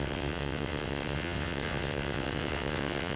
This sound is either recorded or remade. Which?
remade